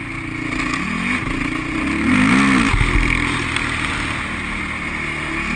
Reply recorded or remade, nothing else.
recorded